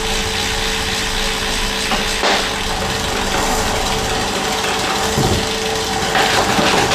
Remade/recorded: recorded